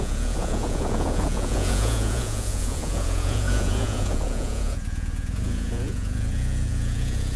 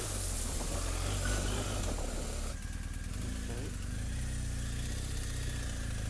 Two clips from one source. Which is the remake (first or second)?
first